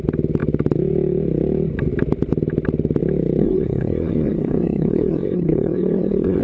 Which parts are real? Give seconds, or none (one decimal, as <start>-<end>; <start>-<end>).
0.0-3.4